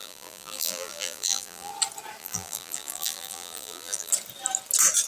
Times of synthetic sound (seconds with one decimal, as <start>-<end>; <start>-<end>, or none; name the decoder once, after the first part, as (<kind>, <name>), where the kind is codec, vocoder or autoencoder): 0.0-1.7 (vocoder, BigVGAN v2); 2.2-4.1